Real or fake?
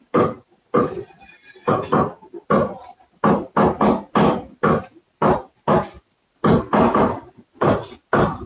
real